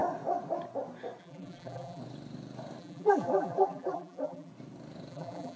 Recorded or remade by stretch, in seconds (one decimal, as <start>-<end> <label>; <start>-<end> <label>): 0.0-1.2 recorded; 1.2-2.0 remade; 2.0-2.8 recorded; 2.8-4.5 remade; 4.5-5.1 recorded; 5.1-5.6 remade